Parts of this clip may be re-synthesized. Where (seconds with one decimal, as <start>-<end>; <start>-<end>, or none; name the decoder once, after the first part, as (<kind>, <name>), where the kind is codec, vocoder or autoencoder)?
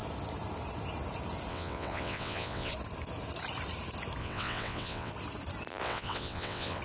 1.5-2.7 (vocoder, WaveNeXt); 4.2-5.1; 5.8-6.8